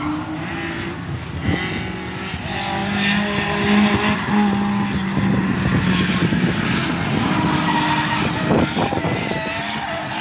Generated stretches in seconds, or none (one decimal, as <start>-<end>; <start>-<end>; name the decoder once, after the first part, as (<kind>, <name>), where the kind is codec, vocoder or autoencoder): none